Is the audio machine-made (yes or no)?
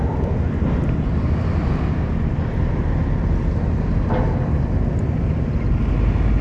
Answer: no